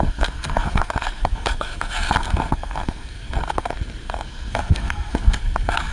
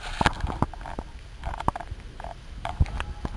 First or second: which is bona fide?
second